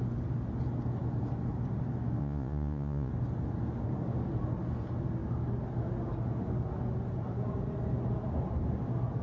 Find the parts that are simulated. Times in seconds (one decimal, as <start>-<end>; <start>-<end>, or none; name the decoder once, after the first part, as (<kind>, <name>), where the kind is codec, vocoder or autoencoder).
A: 2.2-3.1 (vocoder, Vocos)